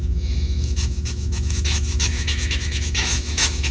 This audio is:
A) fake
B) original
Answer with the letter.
A